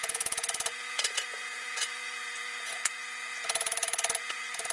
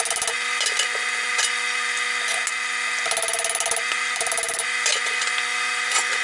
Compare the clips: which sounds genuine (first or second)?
second